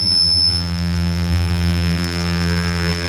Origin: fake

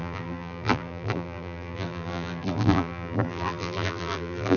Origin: fake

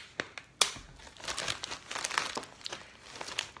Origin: real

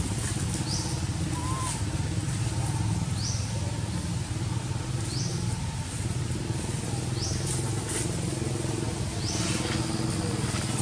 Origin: real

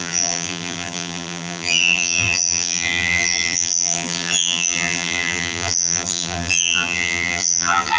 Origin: fake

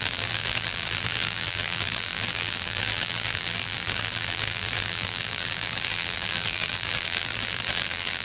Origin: fake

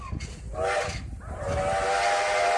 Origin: real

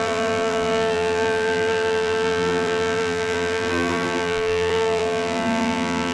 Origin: fake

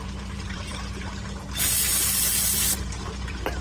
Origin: fake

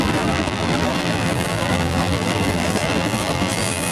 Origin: fake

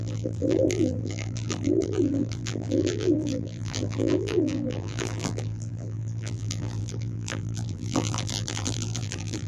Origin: fake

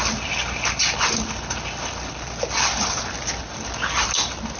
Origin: real